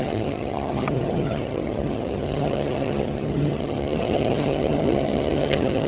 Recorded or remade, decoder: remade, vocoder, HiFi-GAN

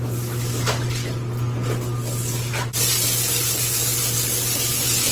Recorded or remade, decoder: recorded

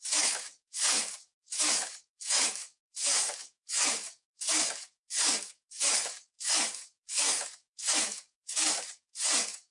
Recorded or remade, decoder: remade, codec, DAC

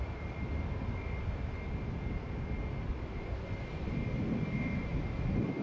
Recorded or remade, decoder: recorded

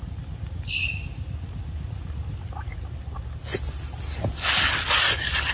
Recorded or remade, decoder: recorded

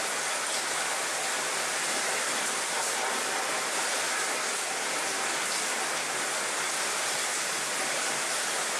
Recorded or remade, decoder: remade, vocoder, BigVGAN v2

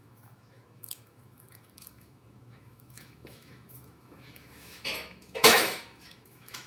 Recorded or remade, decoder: remade, autoencoder, DAC-VAE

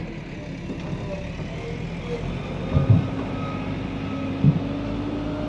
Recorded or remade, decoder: recorded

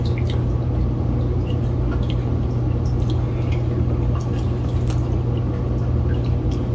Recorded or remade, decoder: recorded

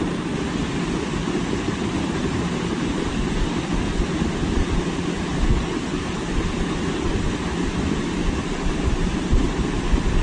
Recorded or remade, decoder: recorded